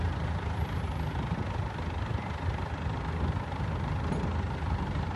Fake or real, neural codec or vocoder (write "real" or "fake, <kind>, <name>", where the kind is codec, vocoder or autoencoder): real